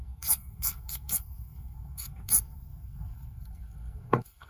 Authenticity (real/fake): fake